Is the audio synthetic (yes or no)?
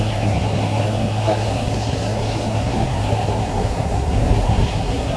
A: yes